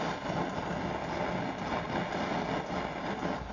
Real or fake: real